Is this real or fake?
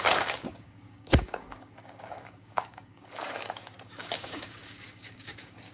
fake